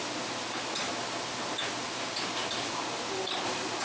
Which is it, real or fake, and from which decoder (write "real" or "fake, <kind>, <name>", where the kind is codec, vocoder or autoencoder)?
real